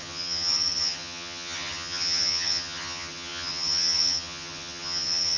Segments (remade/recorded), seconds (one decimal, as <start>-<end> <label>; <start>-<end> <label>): 0.0-5.4 remade